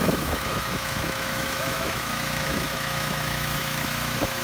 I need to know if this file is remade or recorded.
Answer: remade